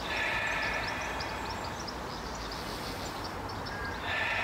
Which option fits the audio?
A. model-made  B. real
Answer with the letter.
B